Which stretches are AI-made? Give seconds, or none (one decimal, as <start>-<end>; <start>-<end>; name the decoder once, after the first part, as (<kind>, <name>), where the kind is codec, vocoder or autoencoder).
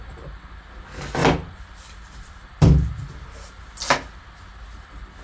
none